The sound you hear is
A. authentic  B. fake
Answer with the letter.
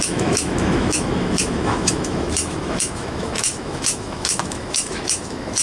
B